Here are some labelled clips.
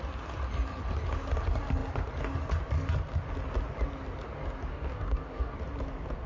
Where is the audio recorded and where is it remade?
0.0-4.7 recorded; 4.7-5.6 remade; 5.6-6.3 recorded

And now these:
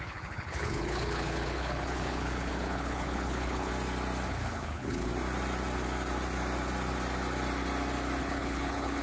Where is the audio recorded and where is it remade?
0.0-3.7 remade; 3.7-4.3 recorded; 4.3-5.1 remade; 5.1-8.2 recorded; 8.2-9.0 remade

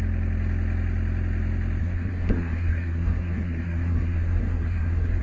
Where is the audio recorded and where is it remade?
0.0-1.8 recorded; 1.8-5.2 remade

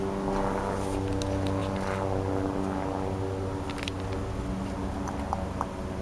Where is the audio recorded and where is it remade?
0.0-6.0 recorded

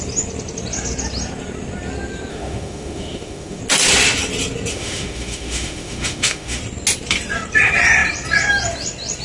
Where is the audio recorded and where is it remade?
0.0-2.3 recorded; 2.3-3.6 remade; 3.6-4.7 recorded; 4.7-6.6 remade; 6.6-9.2 recorded

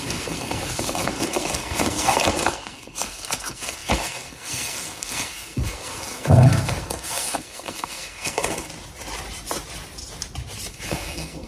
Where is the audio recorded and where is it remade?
0.0-8.7 remade; 8.7-10.7 recorded; 10.7-11.5 remade

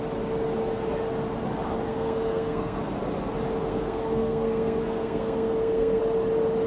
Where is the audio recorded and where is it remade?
0.0-1.9 recorded; 1.9-2.8 remade; 2.8-3.6 recorded; 3.6-6.0 remade; 6.0-6.7 recorded

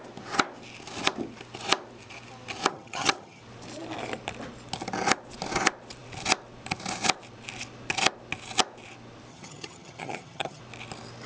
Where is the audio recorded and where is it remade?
0.0-2.7 recorded; 2.7-3.4 remade; 3.4-9.3 recorded; 9.3-10.6 remade; 10.6-11.3 recorded